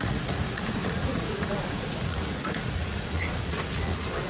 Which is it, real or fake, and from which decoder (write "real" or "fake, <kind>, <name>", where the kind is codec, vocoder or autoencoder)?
fake, vocoder, Vocos